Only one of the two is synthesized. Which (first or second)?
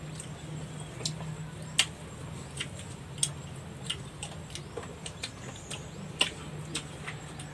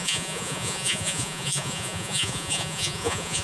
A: second